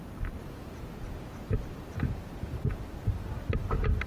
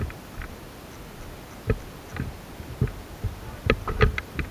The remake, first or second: first